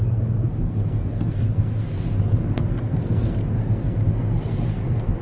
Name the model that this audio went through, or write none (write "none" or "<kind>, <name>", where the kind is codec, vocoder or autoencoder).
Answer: codec, SNAC